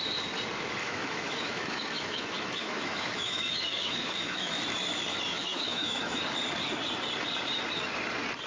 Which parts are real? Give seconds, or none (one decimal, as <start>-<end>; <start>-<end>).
0.0-0.8; 4.5-5.3; 6.2-8.5